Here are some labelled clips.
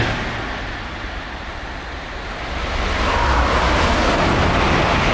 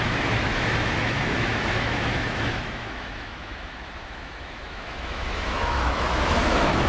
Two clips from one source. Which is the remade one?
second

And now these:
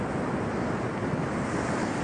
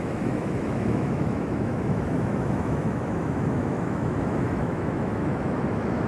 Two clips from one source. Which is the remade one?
second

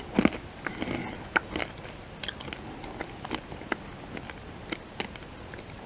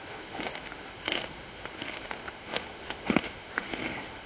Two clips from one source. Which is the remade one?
second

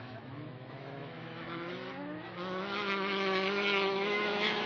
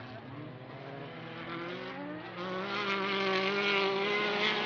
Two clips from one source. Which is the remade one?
first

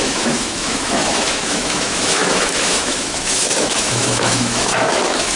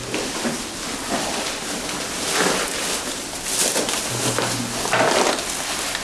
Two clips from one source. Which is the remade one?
first